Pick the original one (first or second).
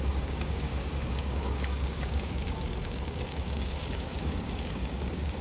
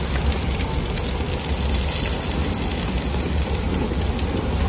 second